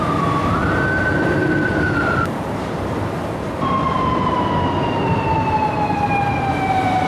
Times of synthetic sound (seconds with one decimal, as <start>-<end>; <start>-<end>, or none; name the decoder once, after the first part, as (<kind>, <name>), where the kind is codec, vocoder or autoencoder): 1.4-2.7 (vocoder, BigVGAN v2)